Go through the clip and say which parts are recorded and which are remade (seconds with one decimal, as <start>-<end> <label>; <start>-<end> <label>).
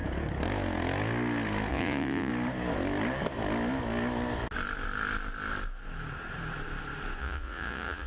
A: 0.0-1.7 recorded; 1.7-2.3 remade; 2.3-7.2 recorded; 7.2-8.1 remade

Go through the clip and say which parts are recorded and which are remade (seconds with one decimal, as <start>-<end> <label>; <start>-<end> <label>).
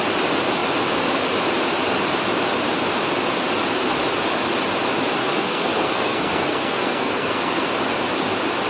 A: 0.0-5.2 recorded; 5.2-7.7 remade; 7.7-8.7 recorded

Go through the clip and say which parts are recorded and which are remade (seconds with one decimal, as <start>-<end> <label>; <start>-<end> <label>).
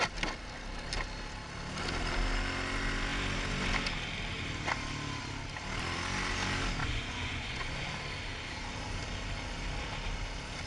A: 0.0-6.8 recorded; 6.8-7.9 remade; 7.9-10.7 recorded